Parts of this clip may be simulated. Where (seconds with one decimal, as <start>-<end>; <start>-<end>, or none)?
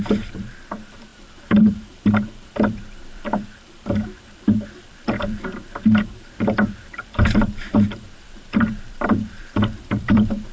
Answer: 0.0-10.5